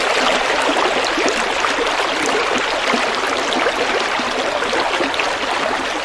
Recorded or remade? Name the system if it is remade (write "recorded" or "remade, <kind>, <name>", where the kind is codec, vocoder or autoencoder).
recorded